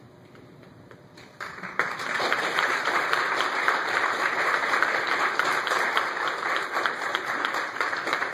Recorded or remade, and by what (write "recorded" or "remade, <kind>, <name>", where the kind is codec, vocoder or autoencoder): remade, vocoder, BigVGAN v2